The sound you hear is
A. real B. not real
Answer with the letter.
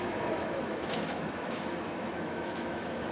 B